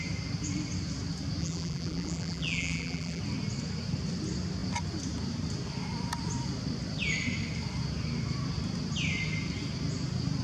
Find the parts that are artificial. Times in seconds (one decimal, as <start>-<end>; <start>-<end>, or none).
1.4-3.2